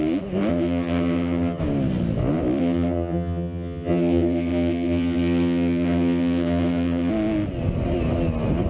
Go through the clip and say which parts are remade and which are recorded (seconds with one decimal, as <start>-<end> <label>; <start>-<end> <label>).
0.0-0.5 recorded; 0.5-1.6 remade; 1.6-2.6 recorded; 2.6-7.1 remade; 7.1-8.7 recorded